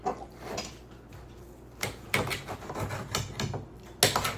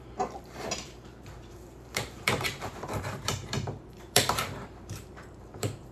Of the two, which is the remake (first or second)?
second